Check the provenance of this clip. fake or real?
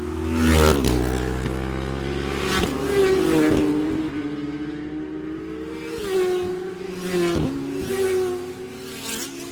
real